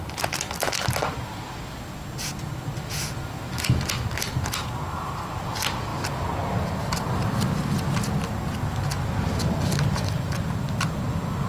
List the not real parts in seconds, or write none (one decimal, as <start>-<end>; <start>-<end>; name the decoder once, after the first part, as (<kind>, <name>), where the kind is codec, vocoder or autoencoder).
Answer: none